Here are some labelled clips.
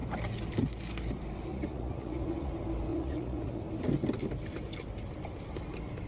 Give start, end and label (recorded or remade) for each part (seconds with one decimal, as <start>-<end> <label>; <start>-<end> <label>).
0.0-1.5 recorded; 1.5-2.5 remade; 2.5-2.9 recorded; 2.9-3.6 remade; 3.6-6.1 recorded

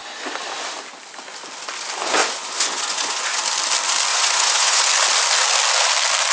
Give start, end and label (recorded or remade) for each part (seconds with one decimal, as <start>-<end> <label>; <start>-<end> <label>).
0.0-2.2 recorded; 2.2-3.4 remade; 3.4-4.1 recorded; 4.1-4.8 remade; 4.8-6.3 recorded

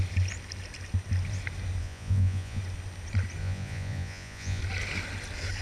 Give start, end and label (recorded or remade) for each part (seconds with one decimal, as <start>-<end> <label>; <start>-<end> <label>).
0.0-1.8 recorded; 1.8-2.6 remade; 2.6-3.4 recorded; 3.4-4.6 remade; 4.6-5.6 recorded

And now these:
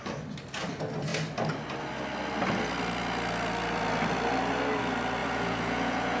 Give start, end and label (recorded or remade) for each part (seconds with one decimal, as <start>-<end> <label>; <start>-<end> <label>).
0.0-5.2 recorded; 5.2-6.2 remade